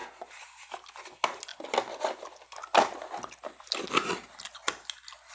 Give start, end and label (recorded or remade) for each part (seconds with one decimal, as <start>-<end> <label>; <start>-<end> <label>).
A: 0.0-5.3 recorded